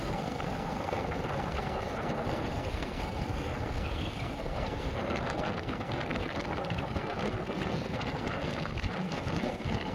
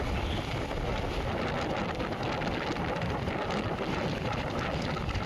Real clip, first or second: second